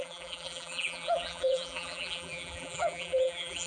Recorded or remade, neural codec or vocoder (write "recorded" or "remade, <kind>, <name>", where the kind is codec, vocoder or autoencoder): remade, vocoder, BigVGAN v2